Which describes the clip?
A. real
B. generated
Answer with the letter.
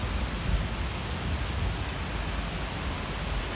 A